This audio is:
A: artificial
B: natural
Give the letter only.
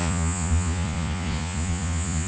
A